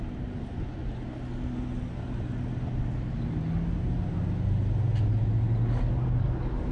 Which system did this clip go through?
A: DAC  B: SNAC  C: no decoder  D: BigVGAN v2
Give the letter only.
C